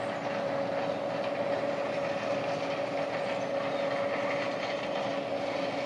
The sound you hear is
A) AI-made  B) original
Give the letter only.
B